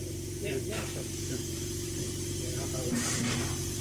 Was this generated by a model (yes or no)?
yes